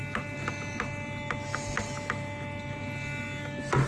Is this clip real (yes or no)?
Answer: yes